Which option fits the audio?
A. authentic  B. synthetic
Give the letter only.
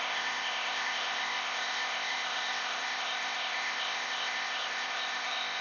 B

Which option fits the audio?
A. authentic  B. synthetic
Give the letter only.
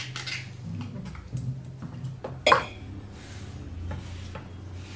A